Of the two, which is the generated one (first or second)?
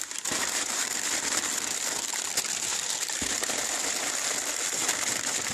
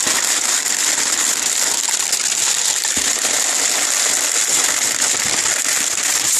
first